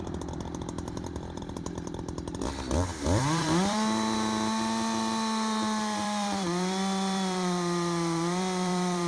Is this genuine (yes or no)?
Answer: no